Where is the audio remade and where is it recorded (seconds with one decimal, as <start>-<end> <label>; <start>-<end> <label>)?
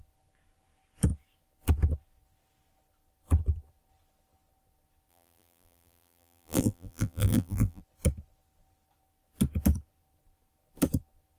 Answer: 0.0-5.1 recorded; 5.1-7.8 remade; 7.8-11.4 recorded